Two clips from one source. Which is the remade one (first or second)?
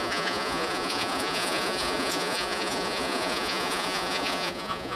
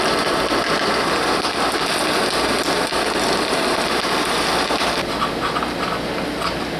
first